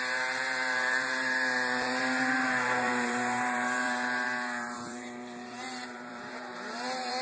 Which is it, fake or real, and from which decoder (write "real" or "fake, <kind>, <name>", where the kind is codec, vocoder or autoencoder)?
fake, vocoder, BigVGAN v2